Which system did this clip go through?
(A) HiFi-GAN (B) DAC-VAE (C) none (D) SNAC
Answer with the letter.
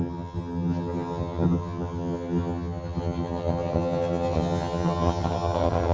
A